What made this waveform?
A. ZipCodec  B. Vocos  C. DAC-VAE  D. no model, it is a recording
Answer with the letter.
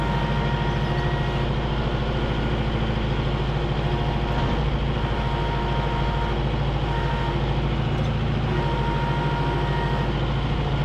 D